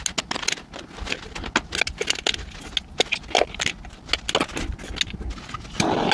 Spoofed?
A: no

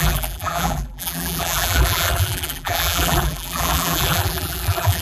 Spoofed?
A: yes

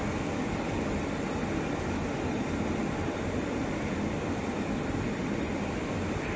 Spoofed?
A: yes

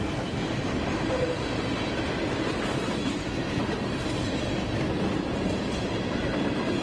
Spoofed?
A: no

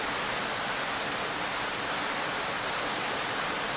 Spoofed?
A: no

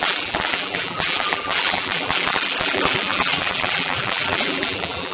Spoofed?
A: yes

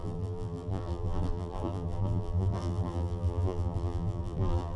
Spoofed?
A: yes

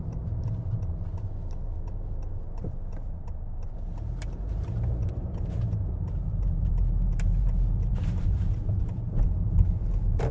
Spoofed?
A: yes